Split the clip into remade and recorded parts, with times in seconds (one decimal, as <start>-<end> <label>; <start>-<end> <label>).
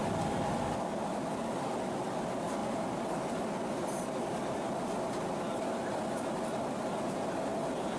0.0-8.0 recorded